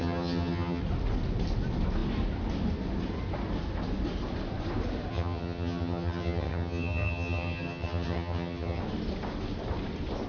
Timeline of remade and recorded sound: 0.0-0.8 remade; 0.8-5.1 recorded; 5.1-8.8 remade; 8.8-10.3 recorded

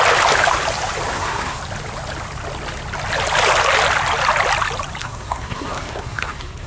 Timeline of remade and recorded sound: 0.0-1.1 recorded; 1.1-1.6 remade; 1.6-5.0 recorded; 5.0-6.7 remade

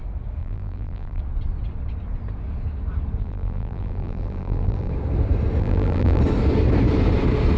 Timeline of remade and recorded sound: 0.0-0.4 recorded; 0.4-1.2 remade; 1.2-3.2 recorded; 3.2-4.9 remade; 4.9-5.6 recorded; 5.6-6.2 remade; 6.2-7.6 recorded